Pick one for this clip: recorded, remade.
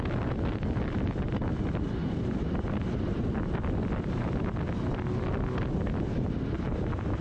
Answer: recorded